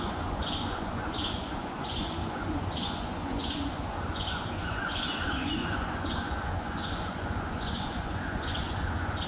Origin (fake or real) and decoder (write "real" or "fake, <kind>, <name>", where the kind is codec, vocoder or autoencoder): fake, vocoder, Vocos